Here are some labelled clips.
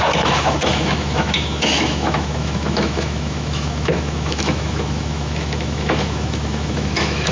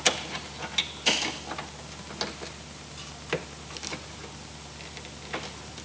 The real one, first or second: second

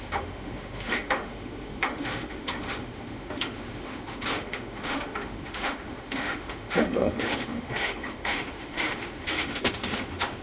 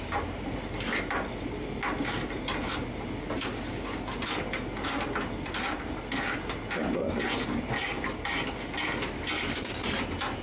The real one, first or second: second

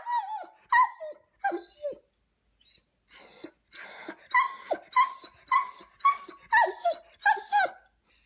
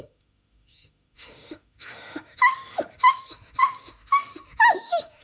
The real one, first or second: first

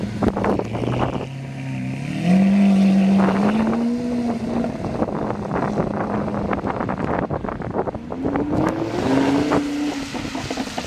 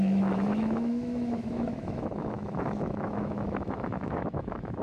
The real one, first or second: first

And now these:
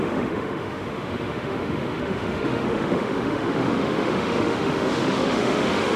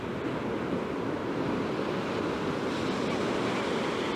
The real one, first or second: second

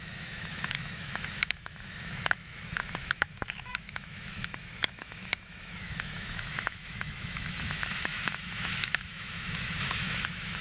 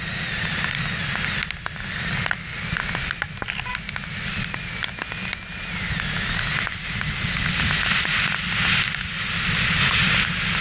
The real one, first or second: second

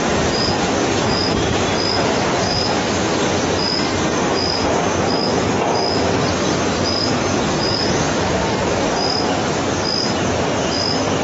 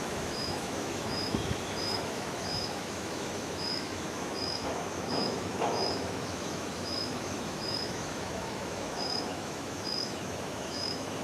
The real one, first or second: first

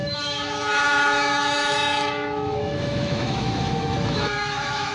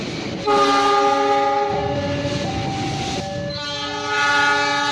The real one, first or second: second